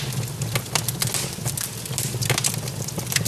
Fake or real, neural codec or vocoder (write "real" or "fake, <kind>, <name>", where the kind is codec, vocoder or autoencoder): real